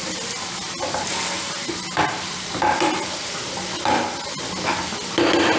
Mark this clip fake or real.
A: real